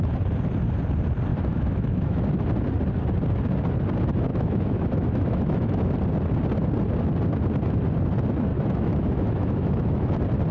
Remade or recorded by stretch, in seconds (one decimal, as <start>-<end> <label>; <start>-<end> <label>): 0.0-1.3 recorded; 1.3-2.2 remade; 2.2-4.3 recorded; 4.3-5.8 remade; 5.8-8.5 recorded; 8.5-10.1 remade; 10.1-10.5 recorded